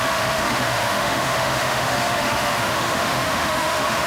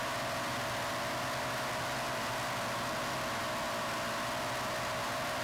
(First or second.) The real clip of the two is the second